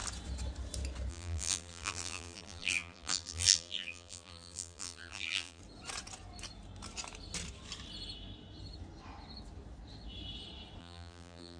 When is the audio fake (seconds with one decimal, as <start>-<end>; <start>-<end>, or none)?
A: 1.1-5.6; 10.8-11.6